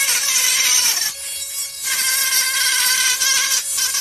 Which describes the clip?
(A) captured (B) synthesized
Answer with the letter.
A